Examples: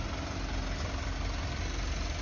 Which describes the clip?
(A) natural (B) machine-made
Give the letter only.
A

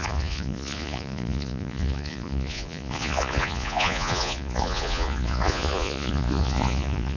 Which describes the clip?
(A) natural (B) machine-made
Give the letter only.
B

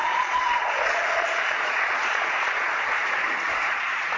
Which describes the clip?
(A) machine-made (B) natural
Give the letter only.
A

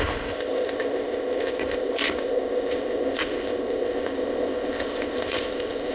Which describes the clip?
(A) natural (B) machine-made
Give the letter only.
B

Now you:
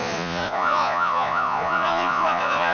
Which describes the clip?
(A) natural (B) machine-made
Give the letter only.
B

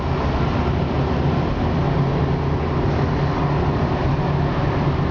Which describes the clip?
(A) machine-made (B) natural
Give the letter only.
B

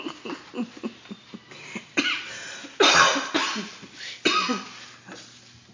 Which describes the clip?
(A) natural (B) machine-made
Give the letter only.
A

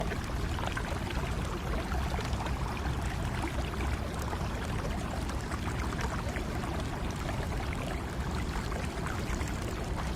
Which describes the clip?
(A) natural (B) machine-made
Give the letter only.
A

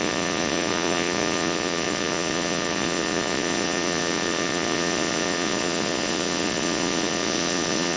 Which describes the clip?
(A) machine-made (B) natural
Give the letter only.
A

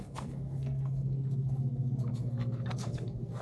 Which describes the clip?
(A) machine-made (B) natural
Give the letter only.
A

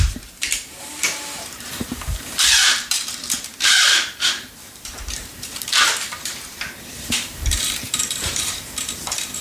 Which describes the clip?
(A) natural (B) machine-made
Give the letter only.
B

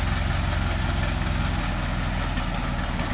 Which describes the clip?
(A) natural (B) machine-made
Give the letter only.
A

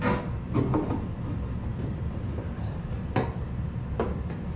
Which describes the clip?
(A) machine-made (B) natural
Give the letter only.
B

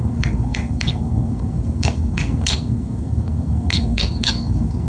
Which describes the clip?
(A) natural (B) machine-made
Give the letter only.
B